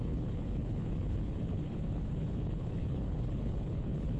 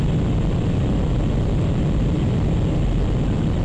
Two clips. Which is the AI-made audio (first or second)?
first